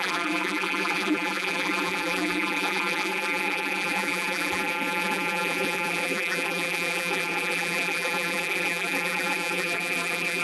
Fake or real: fake